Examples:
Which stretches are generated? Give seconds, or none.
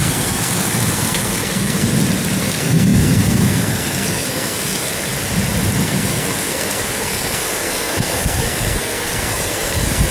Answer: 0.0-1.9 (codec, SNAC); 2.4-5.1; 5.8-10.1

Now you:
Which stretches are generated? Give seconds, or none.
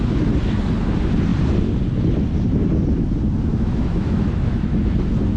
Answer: 3.5-4.8 (autoencoder, DAC-VAE)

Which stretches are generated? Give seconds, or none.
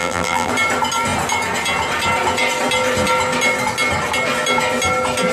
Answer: 0.0-0.5 (vocoder, BigVGAN v2)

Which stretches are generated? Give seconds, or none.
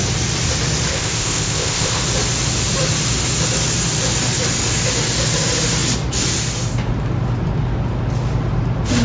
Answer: 0.9-2.0 (codec, ZipCodec)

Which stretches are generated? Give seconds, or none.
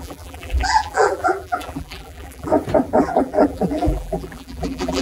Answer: 0.0-2.5 (vocoder, BigVGAN v2); 3.0-5.0